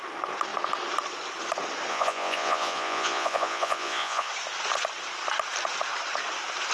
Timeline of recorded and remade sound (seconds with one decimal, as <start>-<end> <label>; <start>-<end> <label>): 0.0-1.9 recorded; 1.9-4.3 remade; 4.3-6.7 recorded